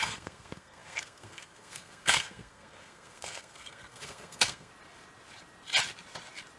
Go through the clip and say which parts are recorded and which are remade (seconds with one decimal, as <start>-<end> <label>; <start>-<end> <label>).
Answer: 0.0-4.7 remade; 4.7-6.6 recorded